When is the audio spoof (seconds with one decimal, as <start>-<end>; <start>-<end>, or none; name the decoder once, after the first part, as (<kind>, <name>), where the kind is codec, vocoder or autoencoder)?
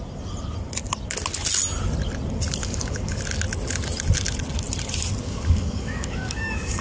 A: 2.6-3.2 (codec, DAC); 5.2-6.8